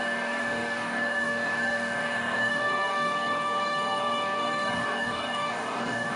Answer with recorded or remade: remade